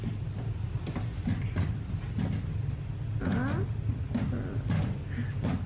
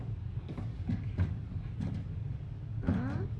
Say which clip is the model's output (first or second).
second